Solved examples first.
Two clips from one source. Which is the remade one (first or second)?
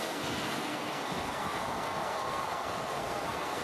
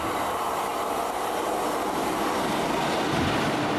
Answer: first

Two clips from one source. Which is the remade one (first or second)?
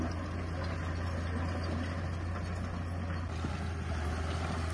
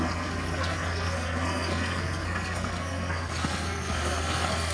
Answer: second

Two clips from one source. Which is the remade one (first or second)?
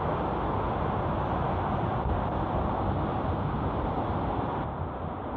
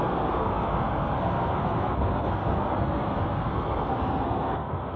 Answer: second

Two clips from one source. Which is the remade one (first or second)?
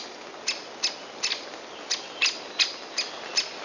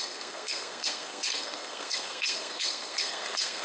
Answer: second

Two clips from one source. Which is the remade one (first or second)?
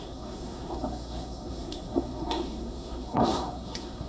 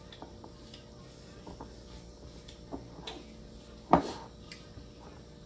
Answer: first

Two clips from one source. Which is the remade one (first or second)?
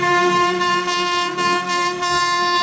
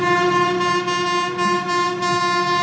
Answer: first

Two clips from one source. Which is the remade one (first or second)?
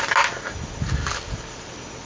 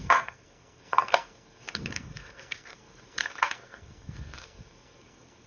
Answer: second